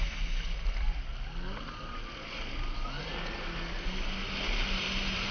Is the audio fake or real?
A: real